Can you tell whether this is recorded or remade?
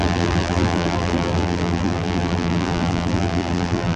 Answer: remade